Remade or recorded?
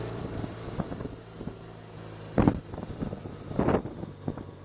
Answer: remade